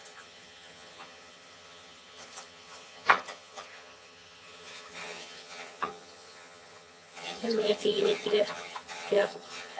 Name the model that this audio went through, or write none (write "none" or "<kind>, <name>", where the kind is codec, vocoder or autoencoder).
vocoder, HiFi-GAN